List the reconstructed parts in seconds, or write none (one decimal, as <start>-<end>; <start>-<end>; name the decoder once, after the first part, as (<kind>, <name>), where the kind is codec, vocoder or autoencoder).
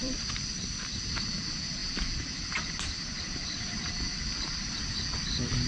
0.0-1.3 (vocoder, BigVGAN v2)